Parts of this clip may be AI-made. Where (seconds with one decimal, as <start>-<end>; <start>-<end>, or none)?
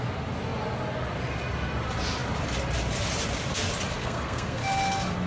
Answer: 4.0-4.6